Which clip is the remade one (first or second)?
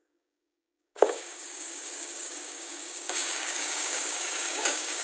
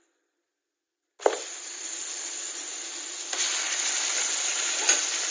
first